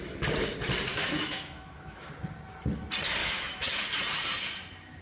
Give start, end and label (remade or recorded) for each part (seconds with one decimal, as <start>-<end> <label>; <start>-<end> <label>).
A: 0.0-0.9 recorded; 0.9-2.1 remade; 2.1-3.2 recorded; 3.2-3.8 remade; 3.8-5.0 recorded